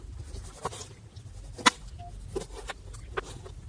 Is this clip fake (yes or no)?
no